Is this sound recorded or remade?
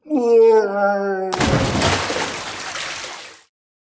recorded